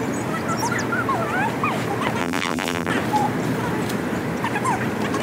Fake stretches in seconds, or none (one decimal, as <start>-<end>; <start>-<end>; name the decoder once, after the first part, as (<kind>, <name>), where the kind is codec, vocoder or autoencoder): 2.2-2.9 (vocoder, BigVGAN v2)